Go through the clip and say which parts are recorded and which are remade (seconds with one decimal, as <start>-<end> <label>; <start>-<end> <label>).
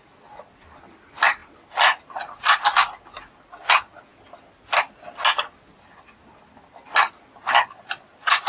0.0-8.5 recorded